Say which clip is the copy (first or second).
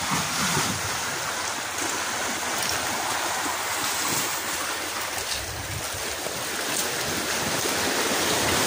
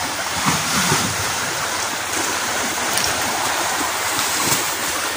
second